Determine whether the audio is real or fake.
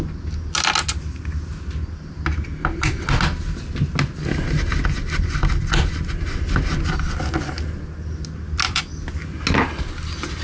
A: real